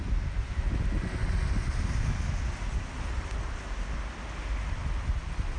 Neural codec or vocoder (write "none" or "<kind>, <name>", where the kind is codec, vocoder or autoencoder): none